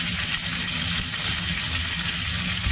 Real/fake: real